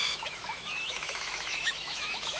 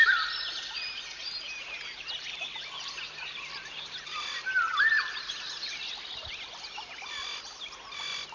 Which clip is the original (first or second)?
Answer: second